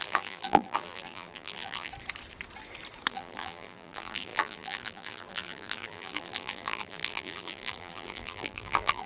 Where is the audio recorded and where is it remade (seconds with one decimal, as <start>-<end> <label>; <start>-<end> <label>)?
0.0-1.9 remade; 1.9-3.1 recorded; 3.1-9.1 remade